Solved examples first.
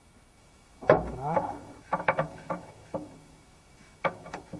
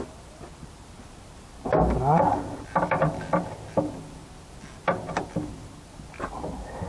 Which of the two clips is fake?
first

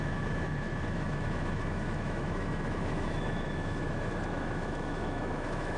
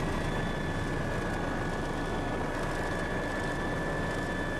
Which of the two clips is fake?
first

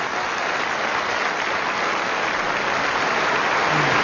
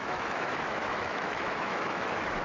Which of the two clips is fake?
second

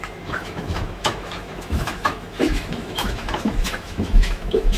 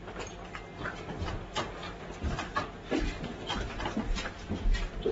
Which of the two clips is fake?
first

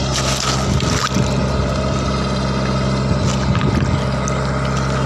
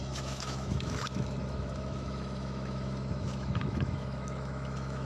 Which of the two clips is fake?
second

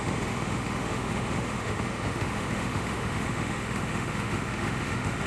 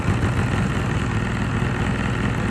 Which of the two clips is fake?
first